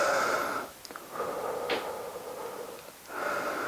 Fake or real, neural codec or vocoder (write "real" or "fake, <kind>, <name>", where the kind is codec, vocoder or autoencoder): real